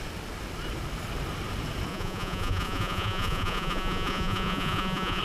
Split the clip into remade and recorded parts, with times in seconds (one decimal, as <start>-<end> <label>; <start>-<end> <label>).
0.0-1.9 recorded; 1.9-5.2 remade